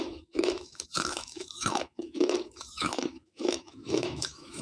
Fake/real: fake